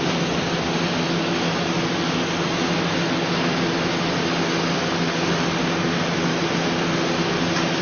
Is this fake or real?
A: real